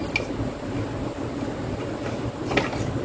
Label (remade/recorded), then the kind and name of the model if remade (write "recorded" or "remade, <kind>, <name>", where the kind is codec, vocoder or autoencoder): recorded